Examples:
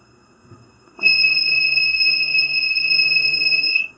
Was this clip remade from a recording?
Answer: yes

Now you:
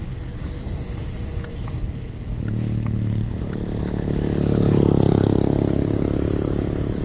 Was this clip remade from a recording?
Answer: no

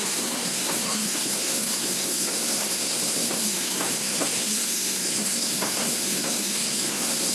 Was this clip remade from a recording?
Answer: yes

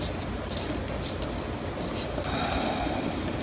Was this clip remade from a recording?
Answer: no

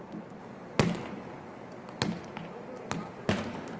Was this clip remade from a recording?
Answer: no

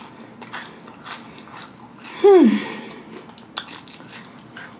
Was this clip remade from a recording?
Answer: no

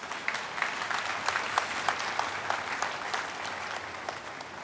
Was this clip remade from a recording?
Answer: no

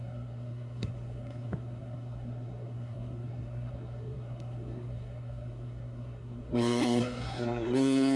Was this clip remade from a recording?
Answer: yes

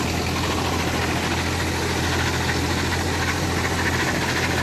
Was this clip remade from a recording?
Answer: no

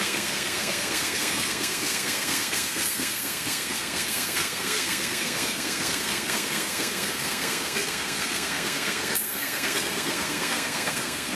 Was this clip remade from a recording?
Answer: yes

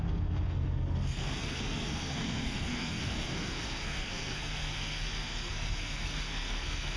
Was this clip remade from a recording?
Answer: yes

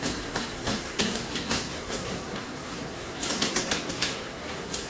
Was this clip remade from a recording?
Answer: yes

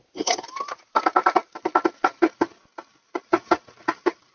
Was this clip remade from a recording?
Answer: no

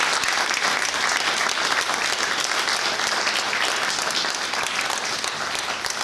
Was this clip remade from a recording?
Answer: no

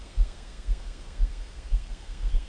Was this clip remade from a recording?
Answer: yes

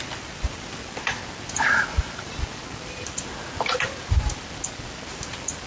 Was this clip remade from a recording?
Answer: no